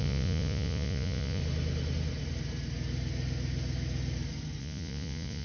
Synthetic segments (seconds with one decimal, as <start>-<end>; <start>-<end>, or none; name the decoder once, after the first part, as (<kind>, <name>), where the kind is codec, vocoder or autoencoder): 0.0-1.4 (vocoder, Vocos); 4.6-5.4